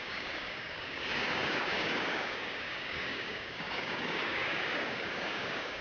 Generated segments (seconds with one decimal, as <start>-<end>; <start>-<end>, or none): 0.0-5.8